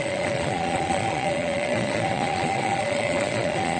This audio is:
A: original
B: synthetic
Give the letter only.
B